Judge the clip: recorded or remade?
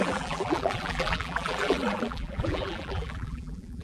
remade